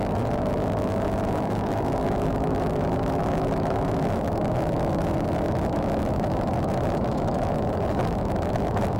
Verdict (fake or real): fake